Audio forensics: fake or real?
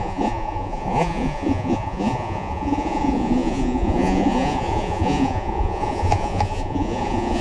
fake